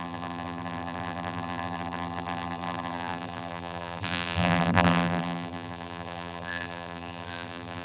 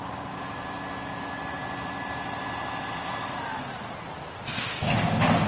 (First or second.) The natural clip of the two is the second